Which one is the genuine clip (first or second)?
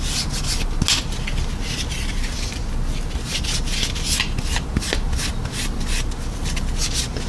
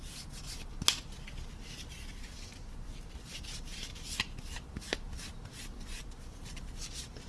first